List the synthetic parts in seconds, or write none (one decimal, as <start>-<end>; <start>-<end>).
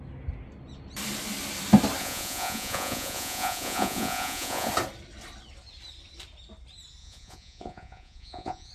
2.0-4.7; 7.0-8.7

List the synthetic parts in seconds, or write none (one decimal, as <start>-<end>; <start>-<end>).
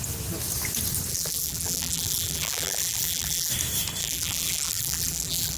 1.1-3.5; 4.0-5.6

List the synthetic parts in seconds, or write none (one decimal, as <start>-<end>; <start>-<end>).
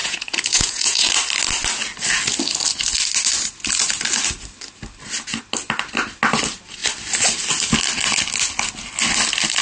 0.0-1.1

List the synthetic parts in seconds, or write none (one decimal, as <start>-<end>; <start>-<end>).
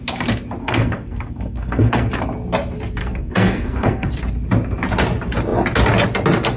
0.6-2.1; 3.0-4.1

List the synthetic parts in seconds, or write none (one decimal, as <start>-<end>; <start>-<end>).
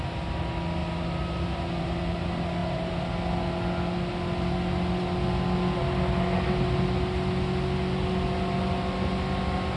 none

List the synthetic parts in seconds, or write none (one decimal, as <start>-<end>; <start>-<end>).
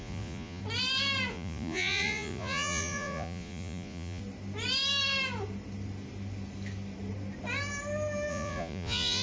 0.0-0.6; 1.3-4.2; 8.3-9.2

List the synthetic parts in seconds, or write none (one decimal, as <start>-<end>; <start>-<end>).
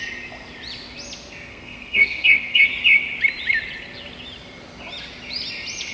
1.5-2.7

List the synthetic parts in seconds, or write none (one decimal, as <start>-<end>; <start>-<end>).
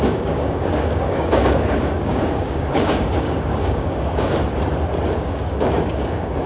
0.0-4.4; 5.2-6.5